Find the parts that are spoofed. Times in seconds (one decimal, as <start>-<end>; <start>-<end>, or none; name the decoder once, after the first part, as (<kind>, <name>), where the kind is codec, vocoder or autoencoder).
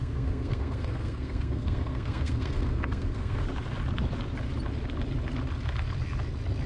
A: 0.0-3.4 (codec, SNAC)